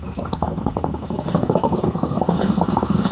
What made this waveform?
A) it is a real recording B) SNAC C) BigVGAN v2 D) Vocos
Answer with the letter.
B